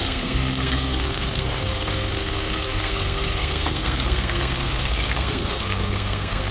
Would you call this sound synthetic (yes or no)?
yes